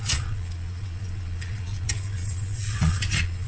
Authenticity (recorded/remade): remade